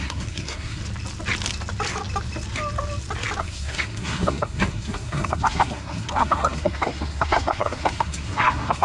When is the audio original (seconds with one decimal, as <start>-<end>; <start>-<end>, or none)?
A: 0.8-3.4